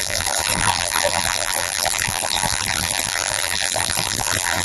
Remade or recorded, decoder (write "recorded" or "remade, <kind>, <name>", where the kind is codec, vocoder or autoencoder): remade, vocoder, BigVGAN v2